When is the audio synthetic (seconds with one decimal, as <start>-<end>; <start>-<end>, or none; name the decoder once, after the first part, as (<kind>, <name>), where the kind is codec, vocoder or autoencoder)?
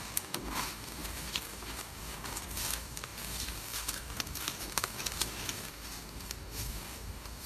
0.0-7.5 (codec, DAC)